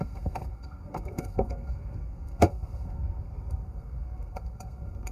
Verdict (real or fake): fake